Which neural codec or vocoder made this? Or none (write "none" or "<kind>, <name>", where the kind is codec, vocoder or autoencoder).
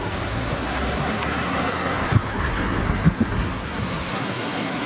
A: codec, SNAC